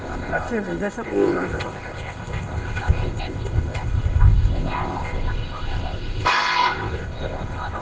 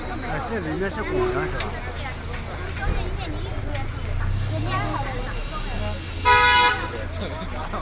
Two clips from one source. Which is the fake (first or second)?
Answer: first